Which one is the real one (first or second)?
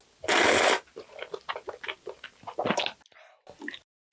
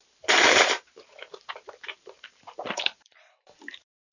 first